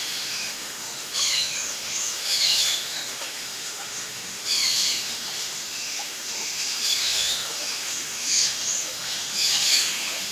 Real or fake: fake